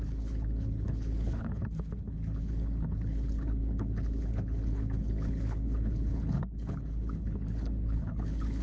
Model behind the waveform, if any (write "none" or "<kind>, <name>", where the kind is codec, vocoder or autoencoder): codec, HILCodec